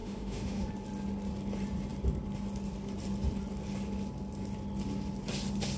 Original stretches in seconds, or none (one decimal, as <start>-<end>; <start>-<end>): 0.7-5.8